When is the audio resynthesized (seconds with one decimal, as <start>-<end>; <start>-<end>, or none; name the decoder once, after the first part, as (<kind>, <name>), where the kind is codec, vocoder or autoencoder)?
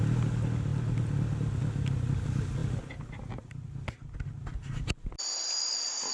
none